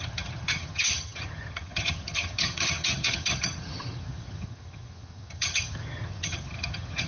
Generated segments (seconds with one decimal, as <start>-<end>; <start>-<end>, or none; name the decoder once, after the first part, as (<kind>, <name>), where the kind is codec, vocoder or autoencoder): 0.0-7.1 (vocoder, HiFi-GAN)